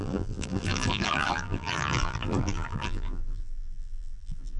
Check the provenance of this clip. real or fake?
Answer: fake